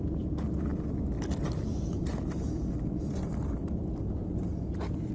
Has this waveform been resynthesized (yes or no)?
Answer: no